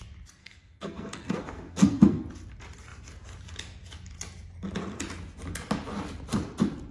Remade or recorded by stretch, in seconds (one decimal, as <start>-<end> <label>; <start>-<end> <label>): 0.0-0.4 recorded; 0.4-2.3 remade; 2.3-6.9 recorded